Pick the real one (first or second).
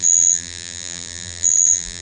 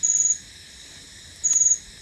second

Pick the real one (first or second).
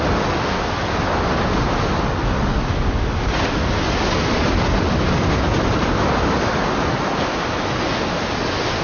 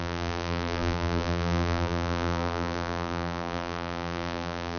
first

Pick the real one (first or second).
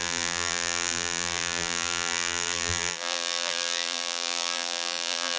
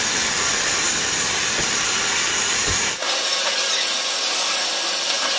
second